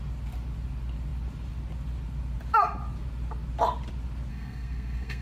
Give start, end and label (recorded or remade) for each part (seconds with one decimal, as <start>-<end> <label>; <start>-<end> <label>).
0.0-4.3 recorded; 4.3-5.2 remade